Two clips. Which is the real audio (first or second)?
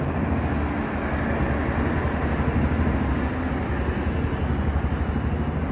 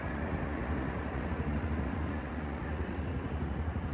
first